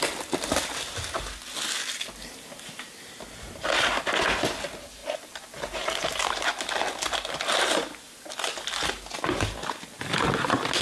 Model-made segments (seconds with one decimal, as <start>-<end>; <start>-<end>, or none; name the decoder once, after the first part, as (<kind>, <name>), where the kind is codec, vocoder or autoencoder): 5.0-6.5 (vocoder, BigVGAN v2)